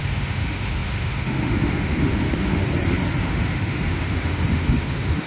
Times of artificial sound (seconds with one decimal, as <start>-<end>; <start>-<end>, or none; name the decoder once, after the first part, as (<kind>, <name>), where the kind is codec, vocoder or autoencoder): 0.0-2.6 (autoencoder, DAC-VAE); 3.2-5.3